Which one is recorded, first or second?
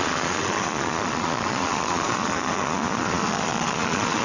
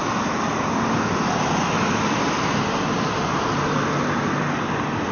second